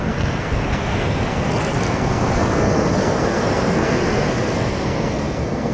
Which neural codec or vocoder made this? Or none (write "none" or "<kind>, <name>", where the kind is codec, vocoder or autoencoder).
codec, SNAC